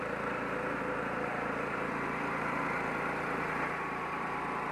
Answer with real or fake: fake